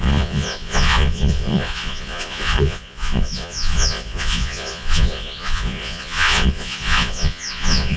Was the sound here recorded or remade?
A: remade